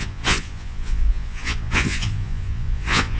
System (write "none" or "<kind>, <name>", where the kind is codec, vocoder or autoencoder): vocoder, Vocos